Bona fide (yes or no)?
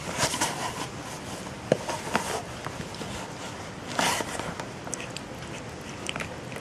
yes